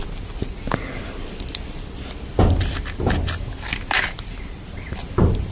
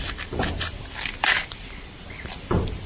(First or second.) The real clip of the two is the first